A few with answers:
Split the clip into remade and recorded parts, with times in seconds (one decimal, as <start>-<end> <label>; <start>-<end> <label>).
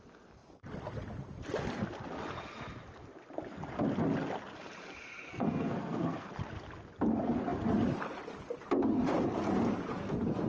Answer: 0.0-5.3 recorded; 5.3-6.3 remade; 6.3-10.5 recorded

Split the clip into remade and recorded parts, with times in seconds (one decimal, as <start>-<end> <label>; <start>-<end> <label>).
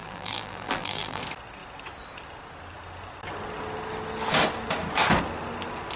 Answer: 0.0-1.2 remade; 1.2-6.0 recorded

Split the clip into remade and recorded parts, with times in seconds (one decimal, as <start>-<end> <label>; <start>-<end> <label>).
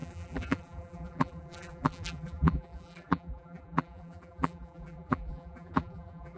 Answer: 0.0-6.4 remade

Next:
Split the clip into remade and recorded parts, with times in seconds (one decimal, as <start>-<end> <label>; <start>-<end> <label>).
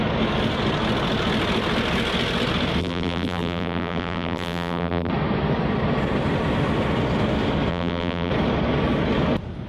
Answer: 0.0-2.8 recorded; 2.8-5.1 remade; 5.1-7.7 recorded; 7.7-8.3 remade; 8.3-9.7 recorded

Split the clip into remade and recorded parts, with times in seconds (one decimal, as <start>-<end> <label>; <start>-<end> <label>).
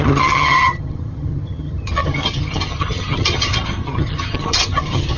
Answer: 0.0-5.2 remade